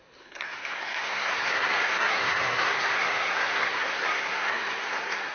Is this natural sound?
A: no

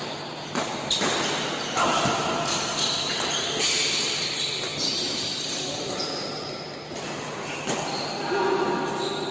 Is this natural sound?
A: yes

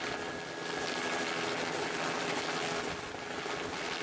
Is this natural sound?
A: yes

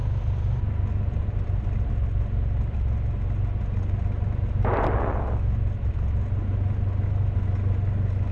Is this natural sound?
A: yes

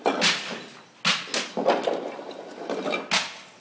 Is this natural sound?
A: yes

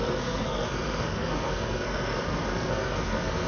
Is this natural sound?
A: no